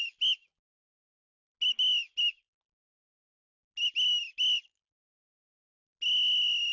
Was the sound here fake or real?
real